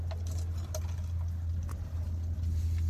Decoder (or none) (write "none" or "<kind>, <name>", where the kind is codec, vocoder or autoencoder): none